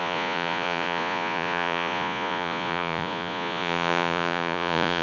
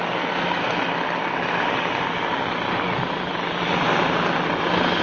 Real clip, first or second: second